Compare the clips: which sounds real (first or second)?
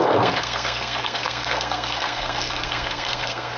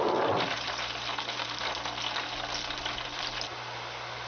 second